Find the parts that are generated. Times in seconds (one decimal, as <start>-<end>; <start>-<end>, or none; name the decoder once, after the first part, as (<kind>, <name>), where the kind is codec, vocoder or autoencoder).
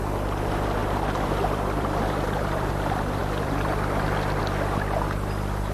0.8-2.7 (vocoder, BigVGAN v2); 3.2-4.4